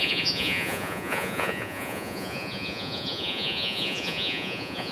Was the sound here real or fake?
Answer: fake